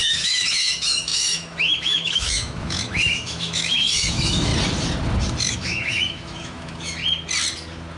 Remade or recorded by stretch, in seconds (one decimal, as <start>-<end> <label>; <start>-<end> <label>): 0.0-4.5 remade; 4.5-5.4 recorded; 5.4-7.0 remade; 7.0-8.0 recorded